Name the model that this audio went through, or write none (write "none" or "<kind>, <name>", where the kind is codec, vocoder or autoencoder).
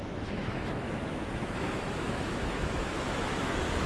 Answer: autoencoder, DAC-VAE